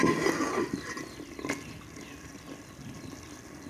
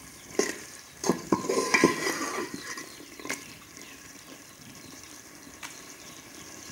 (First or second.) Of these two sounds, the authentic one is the first